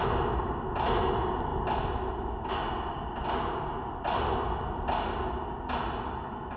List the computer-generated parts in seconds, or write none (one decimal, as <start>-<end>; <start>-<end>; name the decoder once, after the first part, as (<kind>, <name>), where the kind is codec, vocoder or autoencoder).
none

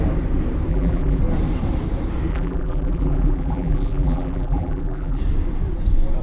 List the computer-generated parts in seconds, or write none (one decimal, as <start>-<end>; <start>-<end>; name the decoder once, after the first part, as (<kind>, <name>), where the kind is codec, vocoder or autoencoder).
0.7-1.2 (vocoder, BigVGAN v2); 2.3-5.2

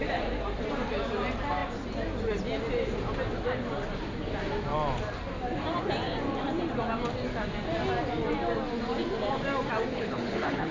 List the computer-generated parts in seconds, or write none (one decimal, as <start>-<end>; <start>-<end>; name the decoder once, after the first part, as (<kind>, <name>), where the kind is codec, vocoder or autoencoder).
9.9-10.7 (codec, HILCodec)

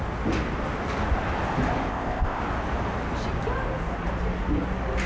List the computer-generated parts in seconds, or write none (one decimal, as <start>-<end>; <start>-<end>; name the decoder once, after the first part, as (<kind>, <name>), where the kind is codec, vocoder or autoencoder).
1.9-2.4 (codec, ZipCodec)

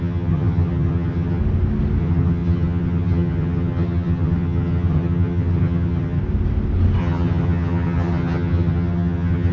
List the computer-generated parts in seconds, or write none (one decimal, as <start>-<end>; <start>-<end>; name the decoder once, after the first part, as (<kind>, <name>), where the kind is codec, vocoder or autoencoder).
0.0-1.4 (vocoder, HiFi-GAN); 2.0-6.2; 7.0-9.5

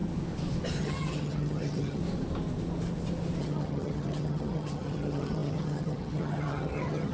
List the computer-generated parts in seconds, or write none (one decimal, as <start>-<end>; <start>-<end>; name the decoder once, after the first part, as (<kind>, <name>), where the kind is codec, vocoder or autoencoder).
0.8-2.0 (vocoder, HiFi-GAN); 3.4-7.1

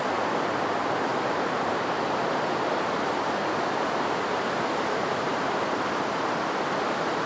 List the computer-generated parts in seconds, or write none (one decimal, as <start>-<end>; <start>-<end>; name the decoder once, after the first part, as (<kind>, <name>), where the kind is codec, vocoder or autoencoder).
1.1-5.5 (vocoder, BigVGAN v2)

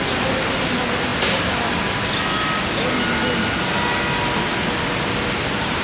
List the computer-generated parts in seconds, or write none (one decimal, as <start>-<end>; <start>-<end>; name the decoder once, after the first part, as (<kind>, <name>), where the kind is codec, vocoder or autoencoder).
none